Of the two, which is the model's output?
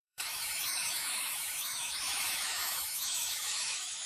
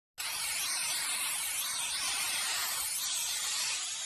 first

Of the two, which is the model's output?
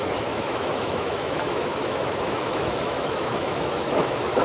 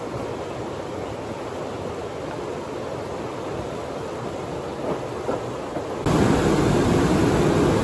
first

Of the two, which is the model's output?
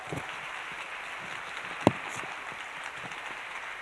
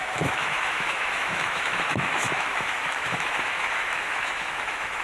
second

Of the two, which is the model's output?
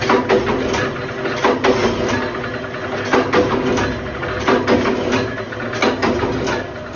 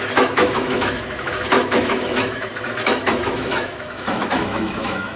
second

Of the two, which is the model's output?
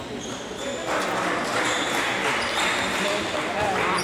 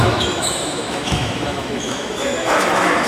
second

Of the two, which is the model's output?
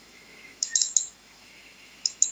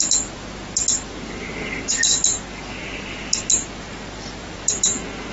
first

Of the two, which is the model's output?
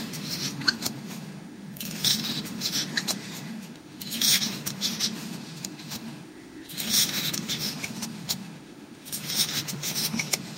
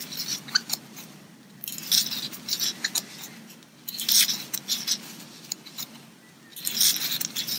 first